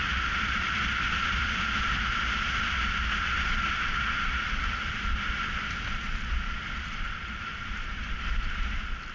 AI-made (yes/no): yes